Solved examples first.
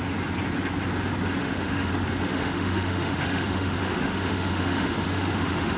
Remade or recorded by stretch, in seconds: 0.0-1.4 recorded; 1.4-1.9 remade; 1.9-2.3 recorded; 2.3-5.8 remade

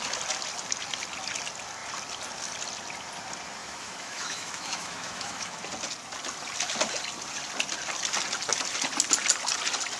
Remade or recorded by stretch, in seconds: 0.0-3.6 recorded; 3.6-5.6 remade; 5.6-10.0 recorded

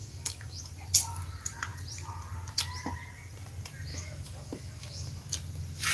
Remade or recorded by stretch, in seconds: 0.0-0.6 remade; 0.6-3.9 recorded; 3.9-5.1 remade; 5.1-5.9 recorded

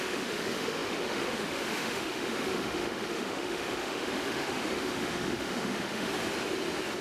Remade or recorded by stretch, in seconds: 0.0-6.1 remade; 6.1-7.0 recorded

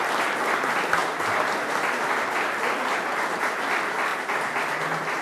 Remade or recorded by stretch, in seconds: 0.0-5.2 recorded

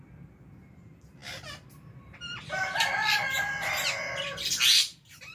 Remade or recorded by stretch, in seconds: 0.0-5.3 recorded